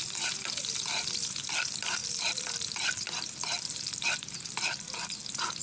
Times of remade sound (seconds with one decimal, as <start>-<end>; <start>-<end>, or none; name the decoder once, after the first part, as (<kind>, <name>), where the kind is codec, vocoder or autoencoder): none